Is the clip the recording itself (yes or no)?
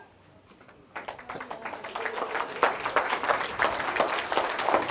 yes